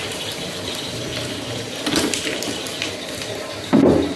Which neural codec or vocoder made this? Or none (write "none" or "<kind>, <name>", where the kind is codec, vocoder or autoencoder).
vocoder, BigVGAN v2